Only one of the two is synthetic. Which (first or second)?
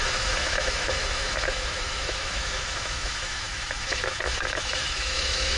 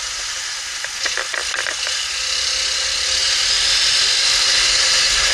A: first